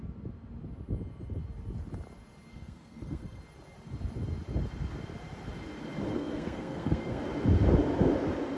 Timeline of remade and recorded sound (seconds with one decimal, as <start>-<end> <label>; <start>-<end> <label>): 0.0-2.5 recorded; 2.5-3.4 remade; 3.4-6.1 recorded; 6.1-7.2 remade; 7.2-8.6 recorded